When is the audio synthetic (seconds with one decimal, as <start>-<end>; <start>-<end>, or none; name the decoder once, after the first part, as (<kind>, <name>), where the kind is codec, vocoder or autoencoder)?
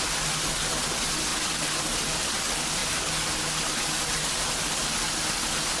none